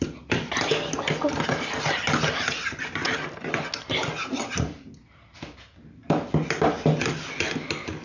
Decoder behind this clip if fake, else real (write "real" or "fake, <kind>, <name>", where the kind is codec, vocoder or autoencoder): real